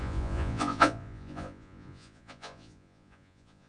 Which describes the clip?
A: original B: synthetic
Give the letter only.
B